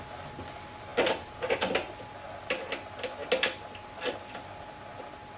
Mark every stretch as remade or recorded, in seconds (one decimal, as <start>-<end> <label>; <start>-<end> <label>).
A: 0.0-5.4 recorded